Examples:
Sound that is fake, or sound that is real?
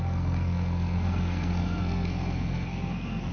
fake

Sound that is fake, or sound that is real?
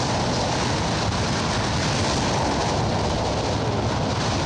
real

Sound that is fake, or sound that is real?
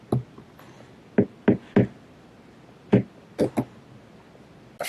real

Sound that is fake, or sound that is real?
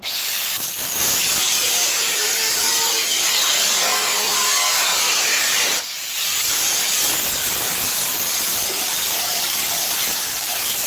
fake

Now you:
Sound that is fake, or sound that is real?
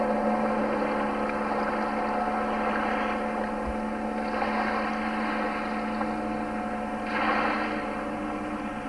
real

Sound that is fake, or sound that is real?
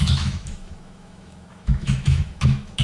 fake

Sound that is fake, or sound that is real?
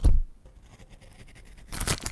real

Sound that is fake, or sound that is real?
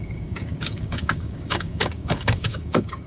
fake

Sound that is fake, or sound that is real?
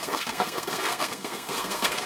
fake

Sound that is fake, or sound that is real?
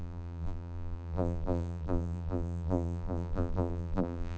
fake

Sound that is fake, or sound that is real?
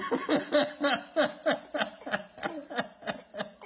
real